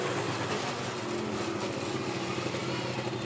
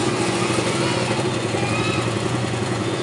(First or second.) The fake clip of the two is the second